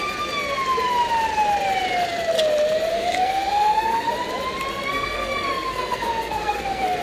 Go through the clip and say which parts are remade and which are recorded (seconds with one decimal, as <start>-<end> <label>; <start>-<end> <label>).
0.0-2.9 recorded; 2.9-4.1 remade; 4.1-4.7 recorded; 4.7-7.0 remade